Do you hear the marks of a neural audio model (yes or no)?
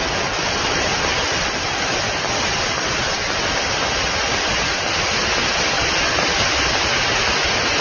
no